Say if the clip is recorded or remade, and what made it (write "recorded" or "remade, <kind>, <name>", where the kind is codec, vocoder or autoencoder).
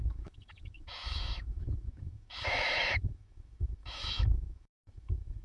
remade, autoencoder, DAC-VAE